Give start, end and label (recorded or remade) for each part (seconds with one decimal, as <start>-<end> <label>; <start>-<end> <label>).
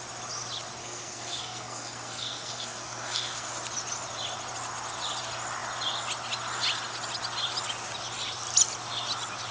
0.0-0.8 recorded; 0.8-3.5 remade; 3.5-9.5 recorded